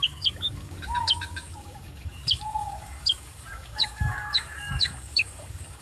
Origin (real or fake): fake